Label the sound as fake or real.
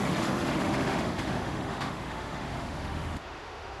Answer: fake